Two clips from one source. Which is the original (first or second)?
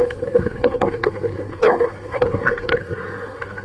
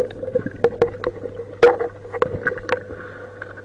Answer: second